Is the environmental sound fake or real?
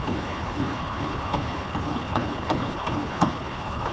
fake